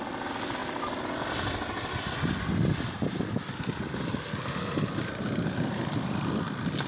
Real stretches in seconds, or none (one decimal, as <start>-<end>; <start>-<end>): 0.0-6.9